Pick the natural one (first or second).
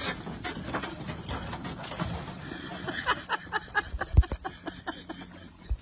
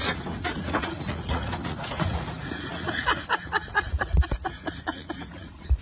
first